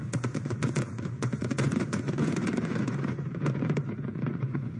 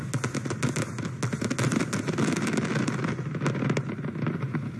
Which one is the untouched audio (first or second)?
second